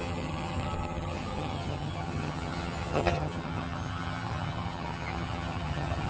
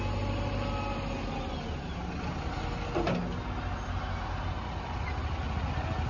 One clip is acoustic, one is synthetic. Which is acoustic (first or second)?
second